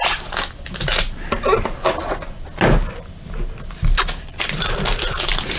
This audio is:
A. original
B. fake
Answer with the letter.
A